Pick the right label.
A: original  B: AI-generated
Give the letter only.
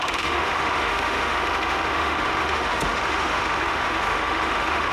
B